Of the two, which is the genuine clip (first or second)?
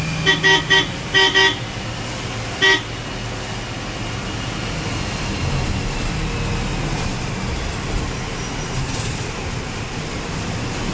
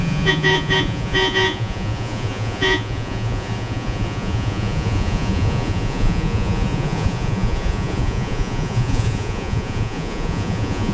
first